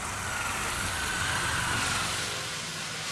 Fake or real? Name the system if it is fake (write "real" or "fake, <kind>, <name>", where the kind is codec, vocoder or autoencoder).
real